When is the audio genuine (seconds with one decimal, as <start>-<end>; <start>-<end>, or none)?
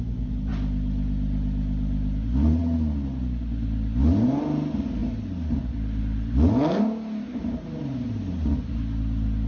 0.0-9.5